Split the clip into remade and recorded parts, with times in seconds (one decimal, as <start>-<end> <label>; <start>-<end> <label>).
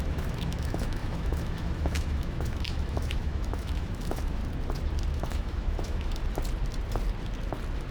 0.0-4.4 remade; 4.4-5.1 recorded; 5.1-6.2 remade; 6.2-7.9 recorded